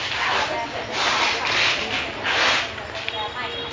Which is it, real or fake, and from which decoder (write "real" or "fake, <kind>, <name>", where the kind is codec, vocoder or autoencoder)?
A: real